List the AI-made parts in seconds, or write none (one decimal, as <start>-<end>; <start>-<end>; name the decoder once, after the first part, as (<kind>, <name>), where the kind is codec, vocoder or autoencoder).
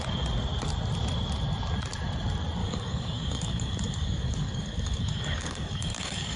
2.6-6.4 (codec, DAC)